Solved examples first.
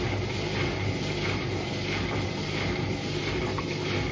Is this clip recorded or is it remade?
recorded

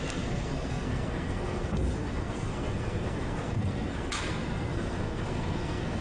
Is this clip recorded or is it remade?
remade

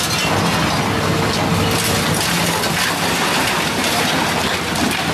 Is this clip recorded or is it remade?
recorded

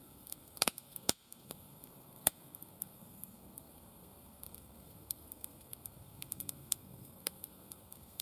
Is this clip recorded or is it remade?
remade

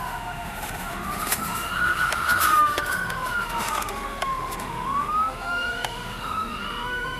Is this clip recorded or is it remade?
remade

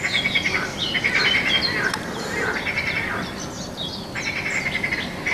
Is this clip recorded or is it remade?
recorded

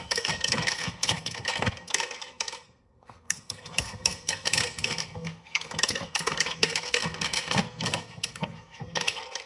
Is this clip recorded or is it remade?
remade